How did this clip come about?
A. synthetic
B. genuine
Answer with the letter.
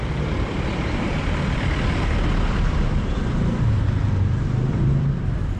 A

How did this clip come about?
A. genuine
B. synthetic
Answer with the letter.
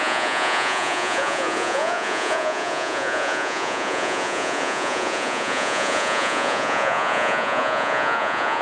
B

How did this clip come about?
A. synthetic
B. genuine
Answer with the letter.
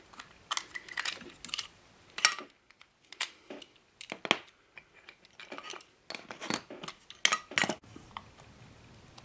B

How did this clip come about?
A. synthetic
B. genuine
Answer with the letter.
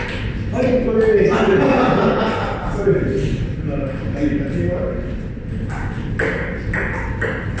B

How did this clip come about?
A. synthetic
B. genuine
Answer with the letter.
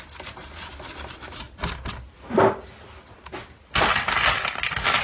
B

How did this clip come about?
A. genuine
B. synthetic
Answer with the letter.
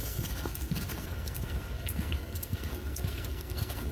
B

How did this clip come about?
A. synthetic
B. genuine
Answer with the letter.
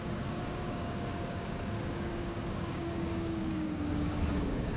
A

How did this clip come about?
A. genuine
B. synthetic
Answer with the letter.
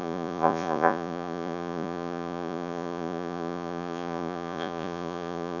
B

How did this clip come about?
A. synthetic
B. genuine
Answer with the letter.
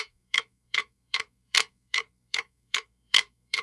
A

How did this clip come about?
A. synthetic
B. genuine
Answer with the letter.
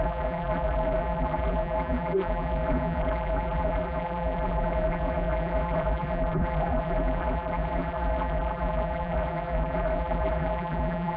A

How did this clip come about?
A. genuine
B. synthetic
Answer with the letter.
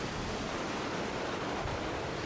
A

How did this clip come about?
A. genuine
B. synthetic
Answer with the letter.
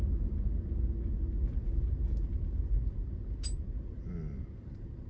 A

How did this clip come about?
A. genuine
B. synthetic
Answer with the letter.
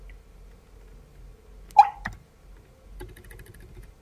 A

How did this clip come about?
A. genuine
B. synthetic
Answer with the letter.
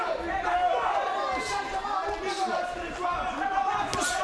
A